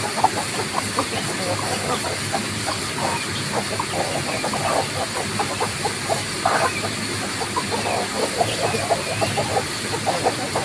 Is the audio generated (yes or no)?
no